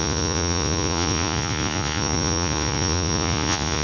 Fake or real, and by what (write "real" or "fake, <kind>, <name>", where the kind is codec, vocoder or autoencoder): fake, vocoder, Vocos